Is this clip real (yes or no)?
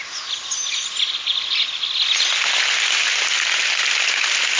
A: yes